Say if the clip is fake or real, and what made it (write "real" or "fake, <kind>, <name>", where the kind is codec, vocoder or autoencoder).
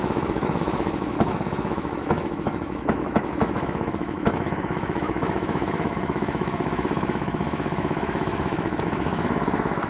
fake, autoencoder, DAC-VAE